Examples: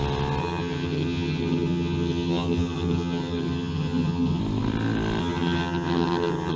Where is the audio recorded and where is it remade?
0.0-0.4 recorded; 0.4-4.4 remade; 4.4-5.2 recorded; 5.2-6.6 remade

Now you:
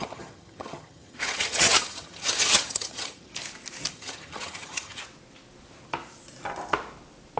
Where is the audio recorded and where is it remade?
0.0-3.3 remade; 3.3-3.9 recorded; 3.9-5.0 remade; 5.0-7.4 recorded

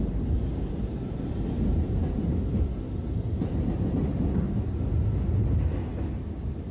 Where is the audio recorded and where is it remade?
0.0-6.7 recorded

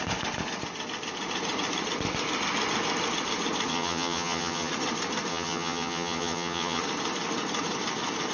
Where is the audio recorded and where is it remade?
0.0-3.7 recorded; 3.7-4.7 remade; 4.7-5.3 recorded; 5.3-6.8 remade; 6.8-8.3 recorded

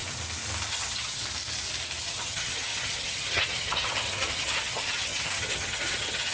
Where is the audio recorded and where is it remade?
0.0-0.7 recorded; 0.7-1.2 remade; 1.2-2.0 recorded; 2.0-6.3 remade

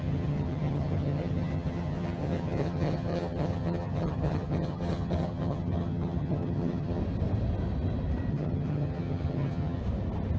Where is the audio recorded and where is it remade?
0.0-7.0 remade; 7.0-8.3 recorded; 8.3-9.8 remade; 9.8-10.4 recorded